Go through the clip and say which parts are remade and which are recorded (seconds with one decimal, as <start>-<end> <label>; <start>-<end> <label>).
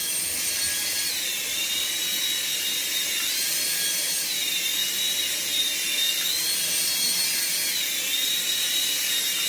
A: 0.0-9.5 recorded